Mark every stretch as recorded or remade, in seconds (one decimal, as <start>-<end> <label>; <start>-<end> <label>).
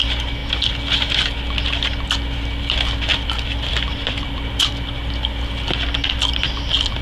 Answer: 0.0-3.1 recorded; 3.1-4.7 remade; 4.7-7.0 recorded